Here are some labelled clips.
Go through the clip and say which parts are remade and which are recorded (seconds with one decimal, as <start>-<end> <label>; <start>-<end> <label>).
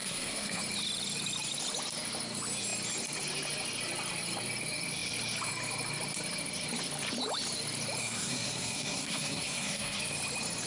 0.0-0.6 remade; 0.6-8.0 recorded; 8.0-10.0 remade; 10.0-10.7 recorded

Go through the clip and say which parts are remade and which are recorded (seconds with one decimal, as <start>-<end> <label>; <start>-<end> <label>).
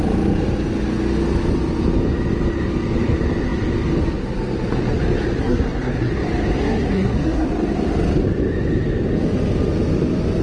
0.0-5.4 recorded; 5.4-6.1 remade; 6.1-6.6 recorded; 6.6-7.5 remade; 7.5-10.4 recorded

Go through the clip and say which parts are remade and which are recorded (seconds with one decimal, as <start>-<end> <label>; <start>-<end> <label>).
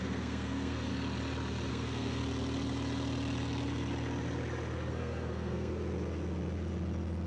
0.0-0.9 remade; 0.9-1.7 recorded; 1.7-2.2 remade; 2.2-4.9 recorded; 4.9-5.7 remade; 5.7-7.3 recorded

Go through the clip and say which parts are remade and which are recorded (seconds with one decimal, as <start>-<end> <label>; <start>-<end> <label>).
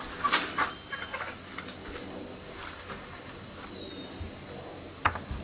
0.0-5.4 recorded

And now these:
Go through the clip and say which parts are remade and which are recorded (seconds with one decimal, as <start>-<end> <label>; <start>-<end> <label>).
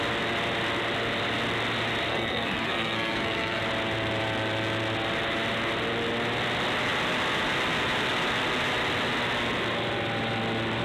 0.0-2.1 recorded; 2.1-3.6 remade; 3.6-10.8 recorded